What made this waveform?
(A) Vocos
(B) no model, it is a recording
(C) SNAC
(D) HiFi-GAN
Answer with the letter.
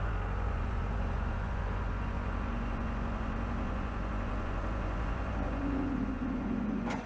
A